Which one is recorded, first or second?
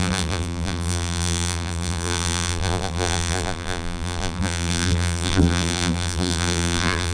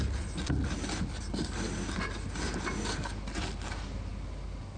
second